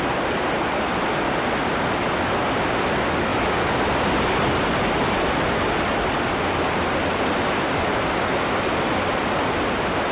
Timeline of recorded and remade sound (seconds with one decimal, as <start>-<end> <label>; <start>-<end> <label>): 0.0-10.1 recorded